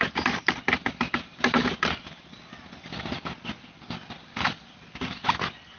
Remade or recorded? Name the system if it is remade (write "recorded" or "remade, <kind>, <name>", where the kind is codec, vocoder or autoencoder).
recorded